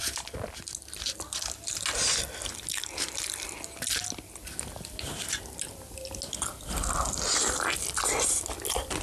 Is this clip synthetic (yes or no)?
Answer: no